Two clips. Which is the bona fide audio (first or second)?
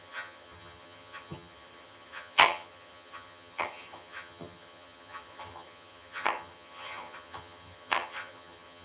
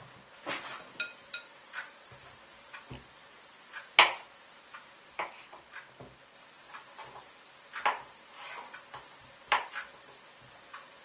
second